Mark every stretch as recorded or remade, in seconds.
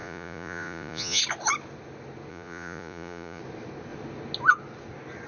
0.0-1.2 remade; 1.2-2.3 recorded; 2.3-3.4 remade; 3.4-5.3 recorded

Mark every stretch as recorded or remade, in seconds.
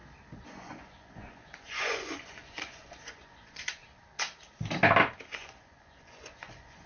0.0-0.5 recorded; 0.5-3.8 remade; 3.8-5.3 recorded; 5.3-6.9 remade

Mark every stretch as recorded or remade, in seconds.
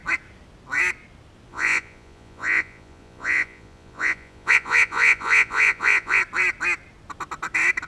0.0-1.5 recorded; 1.5-6.2 remade; 6.2-7.9 recorded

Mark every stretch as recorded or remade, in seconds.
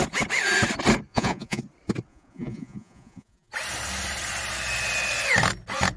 0.0-1.1 recorded; 1.1-1.6 remade; 1.6-2.1 recorded; 2.1-3.5 remade; 3.5-6.0 recorded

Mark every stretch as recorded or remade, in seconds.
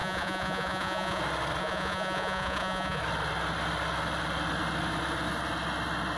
0.0-1.2 remade; 1.2-1.6 recorded; 1.6-3.0 remade; 3.0-6.2 recorded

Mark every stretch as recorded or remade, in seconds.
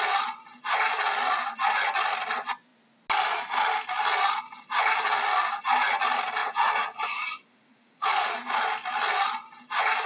0.0-6.4 recorded; 6.4-8.3 remade; 8.3-10.1 recorded